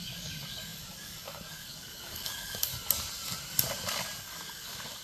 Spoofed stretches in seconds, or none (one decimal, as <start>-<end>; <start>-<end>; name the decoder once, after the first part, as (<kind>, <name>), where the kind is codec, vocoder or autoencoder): 0.0-2.7 (codec, DAC); 4.2-5.0